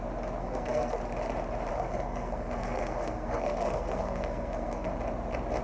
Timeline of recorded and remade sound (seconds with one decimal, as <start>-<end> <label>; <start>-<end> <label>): 0.0-0.4 recorded; 0.4-1.0 remade; 1.0-1.7 recorded; 1.7-4.9 remade; 4.9-5.6 recorded